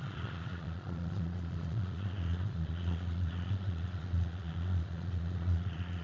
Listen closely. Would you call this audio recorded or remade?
remade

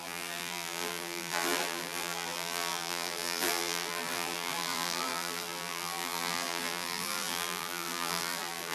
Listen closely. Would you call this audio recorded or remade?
remade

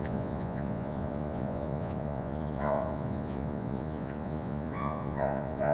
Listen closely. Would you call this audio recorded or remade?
remade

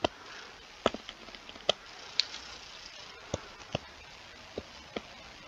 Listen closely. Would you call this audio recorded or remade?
recorded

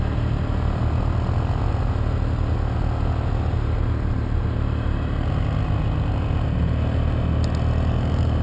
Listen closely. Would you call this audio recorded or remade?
recorded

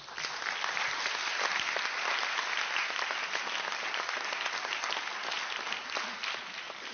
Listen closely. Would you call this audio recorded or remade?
recorded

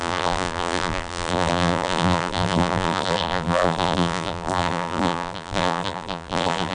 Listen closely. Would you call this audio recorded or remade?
remade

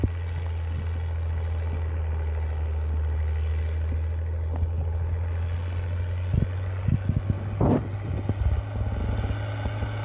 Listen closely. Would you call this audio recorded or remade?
recorded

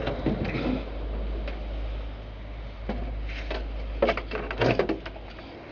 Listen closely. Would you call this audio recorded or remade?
recorded